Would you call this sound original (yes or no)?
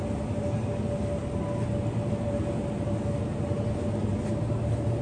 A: yes